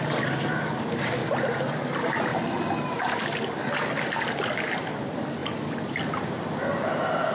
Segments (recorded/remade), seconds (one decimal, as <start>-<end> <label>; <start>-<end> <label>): 0.0-1.2 recorded; 1.2-1.8 remade; 1.8-2.3 recorded; 2.3-3.1 remade; 3.1-7.3 recorded